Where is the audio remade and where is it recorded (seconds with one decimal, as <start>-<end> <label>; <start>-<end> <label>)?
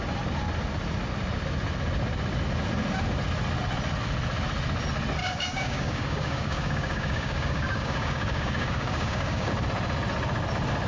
0.0-5.2 recorded; 5.2-9.5 remade; 9.5-10.9 recorded